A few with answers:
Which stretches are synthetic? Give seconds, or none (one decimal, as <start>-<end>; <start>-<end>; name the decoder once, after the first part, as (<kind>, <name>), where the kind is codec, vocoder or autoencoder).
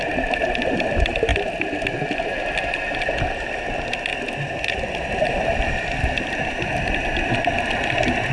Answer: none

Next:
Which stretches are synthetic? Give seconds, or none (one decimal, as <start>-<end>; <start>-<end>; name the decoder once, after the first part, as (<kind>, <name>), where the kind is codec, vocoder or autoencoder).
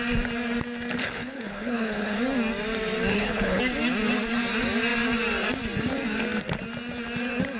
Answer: 1.0-2.2 (codec, HILCodec); 3.1-3.6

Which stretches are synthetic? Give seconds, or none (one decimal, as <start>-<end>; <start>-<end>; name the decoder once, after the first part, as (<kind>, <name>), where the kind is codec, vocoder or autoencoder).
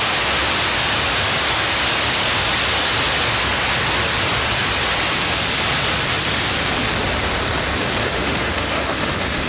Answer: 8.0-9.5 (autoencoder, DAC-VAE)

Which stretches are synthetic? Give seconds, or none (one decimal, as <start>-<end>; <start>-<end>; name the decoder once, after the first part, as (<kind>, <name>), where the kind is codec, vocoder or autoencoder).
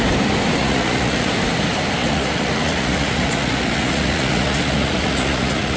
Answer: 0.6-1.3 (vocoder, Vocos); 2.0-5.8